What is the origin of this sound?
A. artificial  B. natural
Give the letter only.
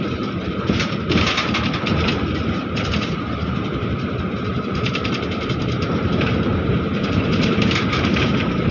A